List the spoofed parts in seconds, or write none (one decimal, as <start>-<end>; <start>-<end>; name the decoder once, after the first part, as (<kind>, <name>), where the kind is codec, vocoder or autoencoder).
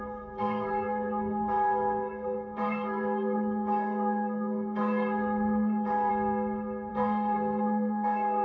0.0-6.1 (codec, SNAC); 6.9-8.4